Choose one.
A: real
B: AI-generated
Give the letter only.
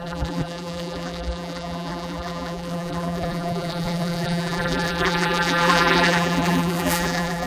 B